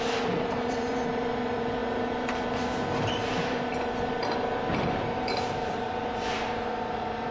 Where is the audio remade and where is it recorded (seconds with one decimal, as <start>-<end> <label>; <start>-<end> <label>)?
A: 0.0-7.3 remade